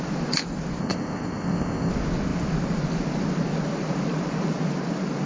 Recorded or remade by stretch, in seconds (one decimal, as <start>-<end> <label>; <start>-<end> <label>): 0.0-0.8 recorded; 0.8-1.9 remade; 1.9-5.3 recorded